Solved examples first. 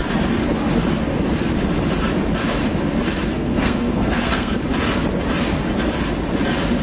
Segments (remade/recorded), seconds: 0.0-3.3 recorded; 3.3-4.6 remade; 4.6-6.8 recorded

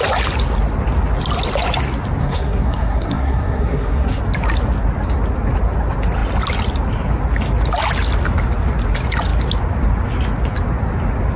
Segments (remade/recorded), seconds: 0.0-2.2 recorded; 2.2-4.2 remade; 4.2-11.4 recorded

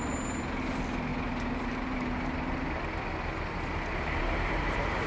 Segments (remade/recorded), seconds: 0.0-5.1 recorded

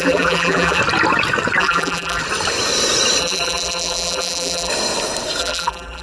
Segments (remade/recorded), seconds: 0.0-0.8 remade; 0.8-1.6 recorded; 1.6-2.2 remade; 2.2-3.2 recorded; 3.2-4.7 remade; 4.7-5.4 recorded; 5.4-6.0 remade

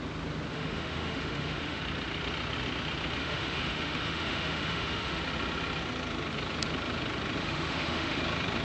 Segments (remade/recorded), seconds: 0.0-0.5 recorded; 0.5-1.8 remade; 1.8-3.2 recorded; 3.2-5.2 remade; 5.2-7.4 recorded; 7.4-8.2 remade; 8.2-8.6 recorded

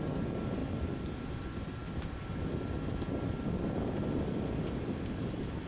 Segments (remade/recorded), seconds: 0.0-1.8 recorded; 1.8-2.4 remade; 2.4-5.7 recorded

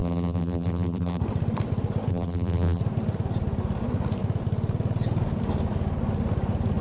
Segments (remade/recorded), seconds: 0.0-1.2 remade; 1.2-2.1 recorded; 2.1-2.8 remade; 2.8-6.8 recorded